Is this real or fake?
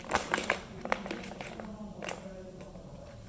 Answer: real